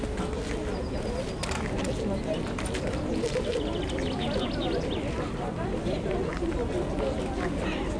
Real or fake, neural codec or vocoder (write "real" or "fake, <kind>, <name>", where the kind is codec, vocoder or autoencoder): real